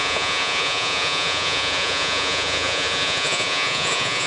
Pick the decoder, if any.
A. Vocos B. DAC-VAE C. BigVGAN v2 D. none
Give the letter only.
A